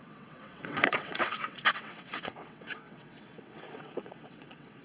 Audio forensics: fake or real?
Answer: fake